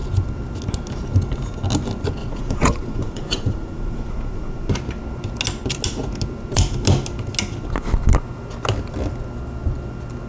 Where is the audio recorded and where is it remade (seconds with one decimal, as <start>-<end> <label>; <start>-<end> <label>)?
0.0-2.2 recorded; 2.2-4.7 remade; 4.7-10.3 recorded